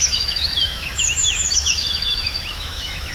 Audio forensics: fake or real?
fake